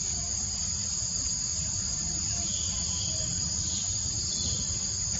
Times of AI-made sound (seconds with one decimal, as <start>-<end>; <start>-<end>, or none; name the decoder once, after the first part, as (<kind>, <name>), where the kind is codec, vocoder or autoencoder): 1.5-4.6 (vocoder, BigVGAN v2)